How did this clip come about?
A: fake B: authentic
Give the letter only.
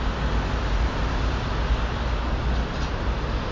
B